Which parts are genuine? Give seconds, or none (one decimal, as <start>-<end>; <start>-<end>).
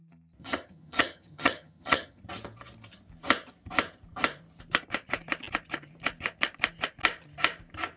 0.0-0.4; 2.2-8.0